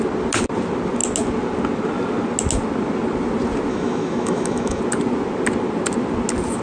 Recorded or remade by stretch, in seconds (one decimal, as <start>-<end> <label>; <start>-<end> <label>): 0.0-3.7 recorded; 3.7-4.8 remade; 4.8-6.6 recorded

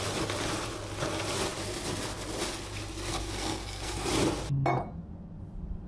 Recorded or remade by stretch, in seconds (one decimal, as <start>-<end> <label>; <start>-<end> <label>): 0.0-3.1 recorded; 3.1-4.1 remade; 4.1-5.9 recorded

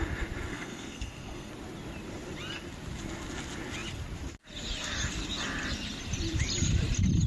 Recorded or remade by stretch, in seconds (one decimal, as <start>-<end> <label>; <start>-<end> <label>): 0.0-0.5 recorded; 0.5-1.5 remade; 1.5-7.3 recorded

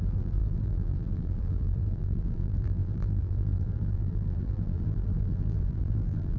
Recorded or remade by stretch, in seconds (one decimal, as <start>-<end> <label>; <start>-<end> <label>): 0.0-6.4 remade

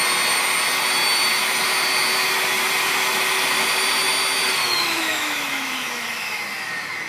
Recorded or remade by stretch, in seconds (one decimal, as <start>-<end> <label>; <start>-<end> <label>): 0.0-4.6 recorded; 4.6-6.4 remade; 6.4-7.1 recorded

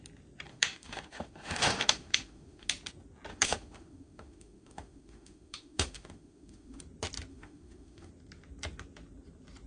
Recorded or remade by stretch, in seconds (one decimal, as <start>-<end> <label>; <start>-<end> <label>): 0.0-0.5 recorded; 0.5-2.7 remade; 2.7-3.3 recorded; 3.3-6.8 remade; 6.8-7.3 recorded; 7.3-8.1 remade; 8.1-9.7 recorded

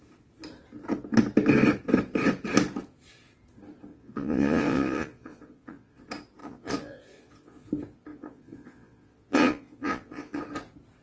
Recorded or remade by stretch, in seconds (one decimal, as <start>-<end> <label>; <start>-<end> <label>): 0.0-3.9 recorded; 3.9-6.0 remade; 6.0-6.4 recorded; 6.4-7.7 remade; 7.7-8.1 recorded; 8.1-10.4 remade; 10.4-11.0 recorded